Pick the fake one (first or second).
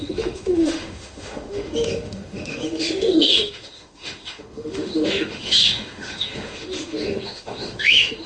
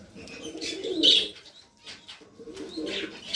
first